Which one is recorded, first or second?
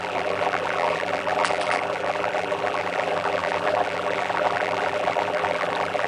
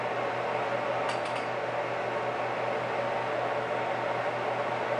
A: second